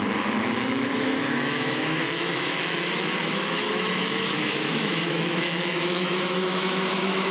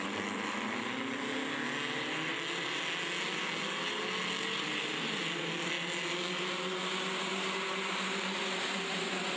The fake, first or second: first